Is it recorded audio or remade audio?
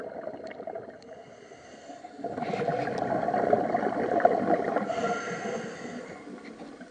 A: recorded